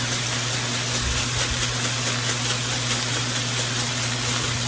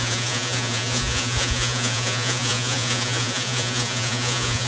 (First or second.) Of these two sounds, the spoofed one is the second